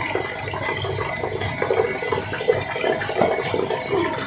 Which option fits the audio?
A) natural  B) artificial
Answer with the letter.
A